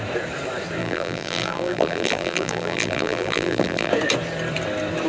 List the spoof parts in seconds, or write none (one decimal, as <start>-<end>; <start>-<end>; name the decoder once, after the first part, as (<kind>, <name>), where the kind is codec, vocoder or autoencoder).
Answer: 0.8-3.9 (vocoder, BigVGAN v2)